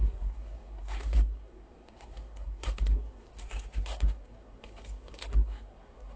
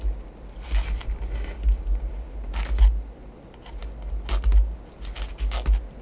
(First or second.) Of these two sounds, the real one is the second